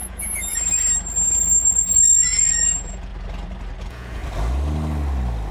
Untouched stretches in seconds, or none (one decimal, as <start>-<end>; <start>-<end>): 0.7-1.6; 3.1-3.8; 4.2-5.5